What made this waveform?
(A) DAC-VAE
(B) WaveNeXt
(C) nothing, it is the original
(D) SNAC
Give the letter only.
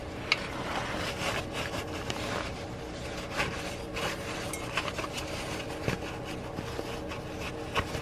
C